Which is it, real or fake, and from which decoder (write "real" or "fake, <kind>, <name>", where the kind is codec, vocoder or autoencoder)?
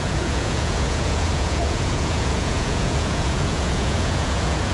fake, vocoder, Vocos